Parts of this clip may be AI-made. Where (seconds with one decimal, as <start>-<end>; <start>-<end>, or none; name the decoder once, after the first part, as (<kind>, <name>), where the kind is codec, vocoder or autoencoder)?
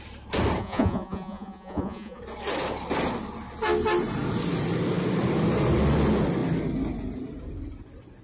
0.6-2.2 (vocoder, Vocos)